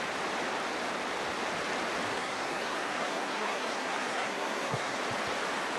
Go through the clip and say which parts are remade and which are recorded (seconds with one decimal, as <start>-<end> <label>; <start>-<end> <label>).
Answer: 0.0-2.1 recorded; 2.1-5.0 remade; 5.0-5.8 recorded